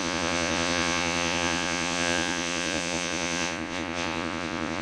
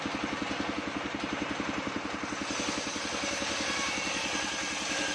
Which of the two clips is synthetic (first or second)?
first